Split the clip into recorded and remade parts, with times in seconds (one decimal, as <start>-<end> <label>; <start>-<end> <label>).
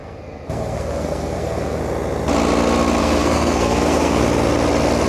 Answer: 0.0-1.8 remade; 1.8-3.0 recorded; 3.0-4.2 remade; 4.2-5.1 recorded